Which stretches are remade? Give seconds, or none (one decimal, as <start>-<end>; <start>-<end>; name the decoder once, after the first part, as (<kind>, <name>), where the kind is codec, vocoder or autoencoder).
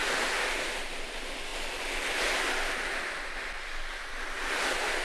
none